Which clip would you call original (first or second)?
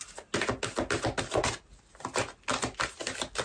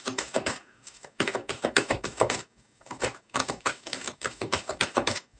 first